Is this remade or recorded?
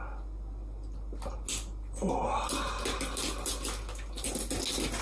recorded